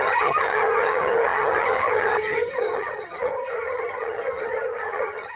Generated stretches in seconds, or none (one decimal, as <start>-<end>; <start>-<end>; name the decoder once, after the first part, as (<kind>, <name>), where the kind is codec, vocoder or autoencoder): 0.0-5.4 (vocoder, HiFi-GAN)